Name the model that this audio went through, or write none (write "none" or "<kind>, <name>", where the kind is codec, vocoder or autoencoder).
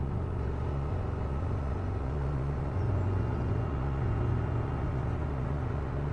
vocoder, Vocos